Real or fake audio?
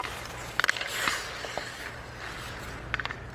real